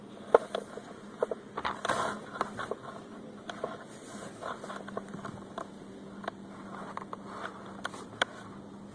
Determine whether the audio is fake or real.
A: real